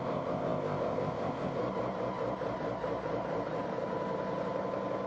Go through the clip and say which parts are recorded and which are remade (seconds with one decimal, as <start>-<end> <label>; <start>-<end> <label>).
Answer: 0.0-1.6 remade; 1.6-5.1 recorded